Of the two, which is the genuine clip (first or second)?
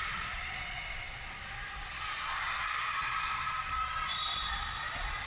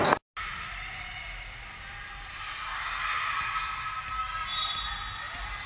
second